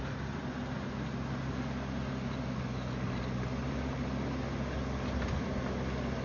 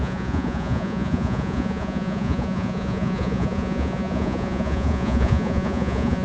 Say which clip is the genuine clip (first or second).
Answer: first